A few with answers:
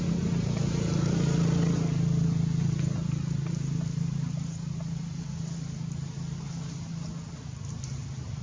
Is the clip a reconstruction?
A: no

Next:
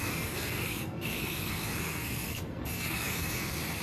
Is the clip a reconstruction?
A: yes